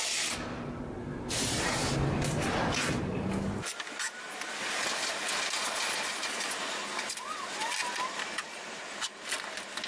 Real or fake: real